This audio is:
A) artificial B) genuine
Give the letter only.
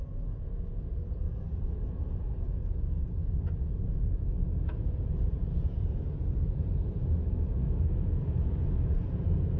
A